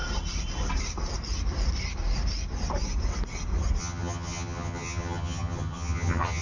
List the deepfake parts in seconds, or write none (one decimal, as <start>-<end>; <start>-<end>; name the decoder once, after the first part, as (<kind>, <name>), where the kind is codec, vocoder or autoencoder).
3.8-6.4 (vocoder, HiFi-GAN)